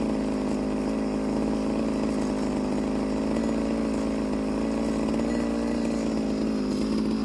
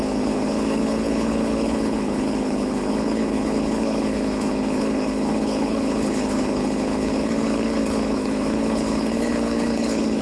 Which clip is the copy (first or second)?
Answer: second